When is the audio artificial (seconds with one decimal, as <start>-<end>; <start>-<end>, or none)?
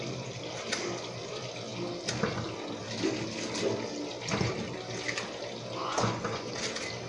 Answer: 5.8-6.5